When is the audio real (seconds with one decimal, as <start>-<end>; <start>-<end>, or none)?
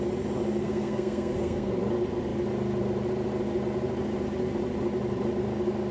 0.0-0.6; 1.7-5.9